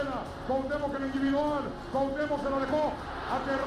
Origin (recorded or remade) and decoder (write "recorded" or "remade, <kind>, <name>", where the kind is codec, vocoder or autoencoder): recorded